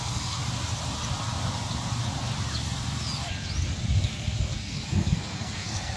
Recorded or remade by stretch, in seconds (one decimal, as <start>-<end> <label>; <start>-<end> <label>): 0.0-0.4 remade; 0.4-4.0 recorded; 4.0-6.0 remade